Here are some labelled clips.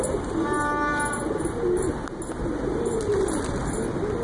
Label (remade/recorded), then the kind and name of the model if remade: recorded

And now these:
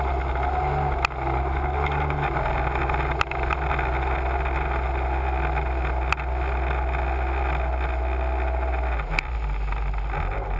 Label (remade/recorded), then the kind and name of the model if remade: recorded